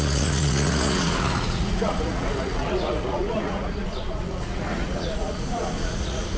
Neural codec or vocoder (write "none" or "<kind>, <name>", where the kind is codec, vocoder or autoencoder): vocoder, Vocos